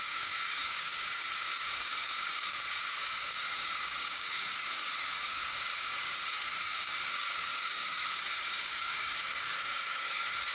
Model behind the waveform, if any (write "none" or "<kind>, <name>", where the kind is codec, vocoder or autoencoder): codec, DAC